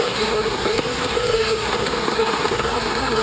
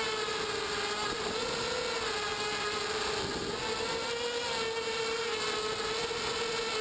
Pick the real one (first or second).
second